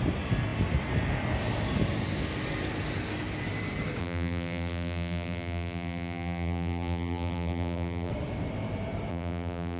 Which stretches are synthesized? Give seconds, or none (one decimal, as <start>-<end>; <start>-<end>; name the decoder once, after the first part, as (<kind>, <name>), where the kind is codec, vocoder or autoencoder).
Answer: 4.0-8.1 (vocoder, BigVGAN v2); 9.1-9.8